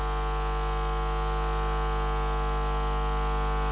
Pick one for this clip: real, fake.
real